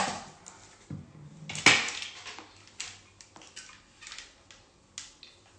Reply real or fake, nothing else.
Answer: real